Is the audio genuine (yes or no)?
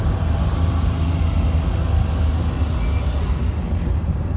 yes